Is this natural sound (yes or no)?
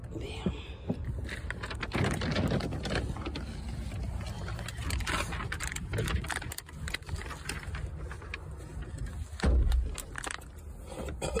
yes